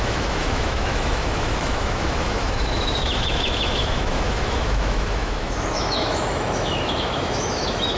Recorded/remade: remade